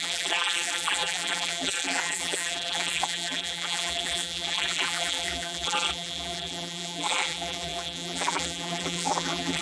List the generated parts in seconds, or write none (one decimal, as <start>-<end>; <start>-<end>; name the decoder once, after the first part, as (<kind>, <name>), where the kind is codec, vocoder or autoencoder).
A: 0.0-9.6 (vocoder, BigVGAN v2)